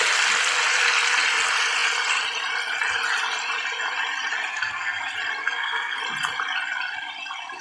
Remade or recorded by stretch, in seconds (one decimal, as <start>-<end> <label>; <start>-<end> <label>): 0.0-4.5 recorded; 4.5-5.0 remade; 5.0-5.4 recorded; 5.4-6.0 remade; 6.0-7.6 recorded